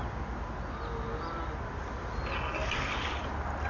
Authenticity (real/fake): real